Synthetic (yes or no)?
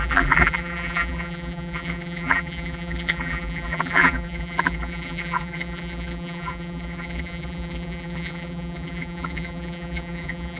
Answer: yes